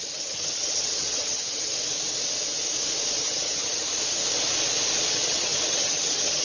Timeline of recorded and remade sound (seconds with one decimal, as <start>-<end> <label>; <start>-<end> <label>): 0.0-1.6 remade; 1.6-3.2 recorded; 3.2-3.9 remade; 3.9-5.1 recorded; 5.1-6.4 remade